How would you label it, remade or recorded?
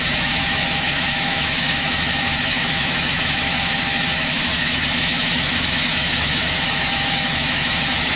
remade